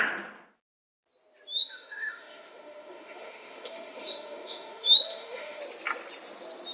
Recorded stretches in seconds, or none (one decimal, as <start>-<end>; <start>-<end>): 0.0-1.6; 5.6-6.7